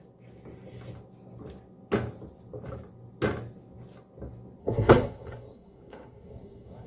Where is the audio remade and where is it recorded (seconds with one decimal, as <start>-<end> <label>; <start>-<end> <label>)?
0.0-4.6 recorded; 4.6-6.9 remade